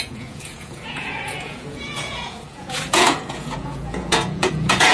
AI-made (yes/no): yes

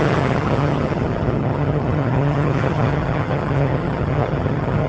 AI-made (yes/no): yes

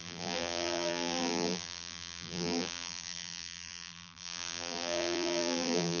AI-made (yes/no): yes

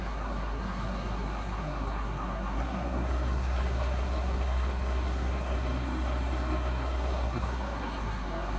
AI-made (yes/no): yes